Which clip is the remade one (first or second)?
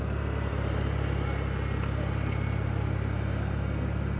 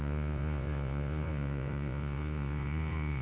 second